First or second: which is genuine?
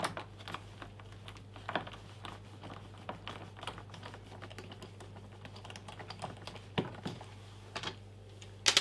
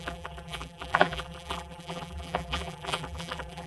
first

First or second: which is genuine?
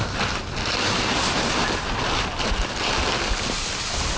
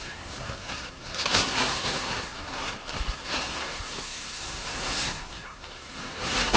first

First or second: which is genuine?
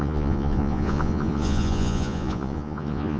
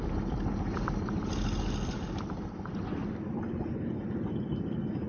second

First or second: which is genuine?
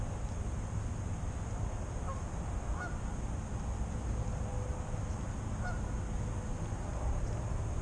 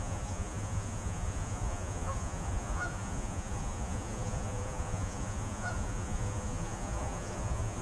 first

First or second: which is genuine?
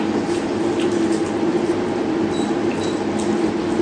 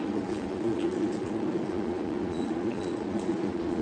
first